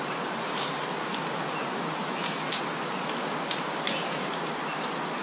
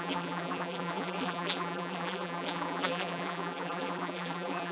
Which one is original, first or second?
first